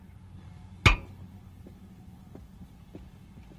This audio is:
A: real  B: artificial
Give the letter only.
A